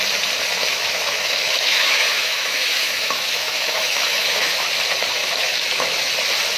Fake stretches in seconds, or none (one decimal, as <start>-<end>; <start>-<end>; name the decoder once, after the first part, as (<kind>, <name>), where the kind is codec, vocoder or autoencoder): 0.7-4.7 (autoencoder, DAC-VAE); 5.2-6.1